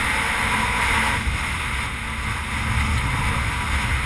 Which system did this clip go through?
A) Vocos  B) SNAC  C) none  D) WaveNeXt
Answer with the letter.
C